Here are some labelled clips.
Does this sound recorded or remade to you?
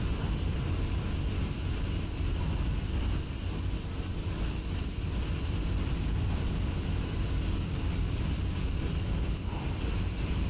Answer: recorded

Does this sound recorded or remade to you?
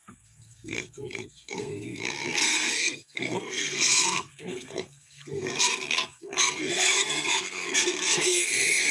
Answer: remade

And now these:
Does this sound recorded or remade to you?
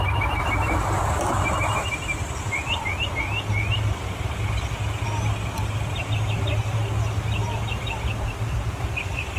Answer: recorded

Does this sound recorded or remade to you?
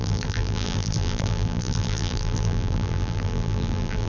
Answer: remade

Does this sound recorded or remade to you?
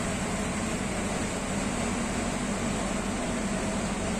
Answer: recorded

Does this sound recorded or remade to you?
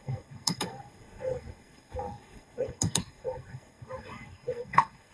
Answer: remade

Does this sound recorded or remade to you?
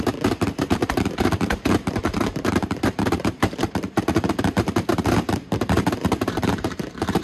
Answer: remade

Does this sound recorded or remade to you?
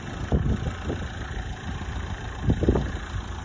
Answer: recorded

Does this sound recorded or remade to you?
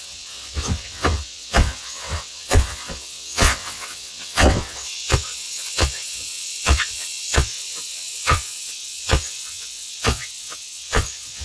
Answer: remade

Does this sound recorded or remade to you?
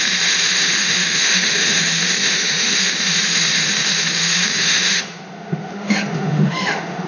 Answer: remade